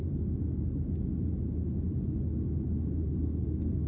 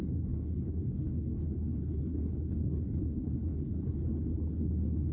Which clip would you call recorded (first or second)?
first